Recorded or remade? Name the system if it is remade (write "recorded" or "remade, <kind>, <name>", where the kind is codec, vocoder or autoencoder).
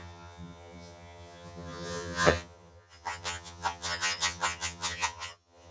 remade, vocoder, HiFi-GAN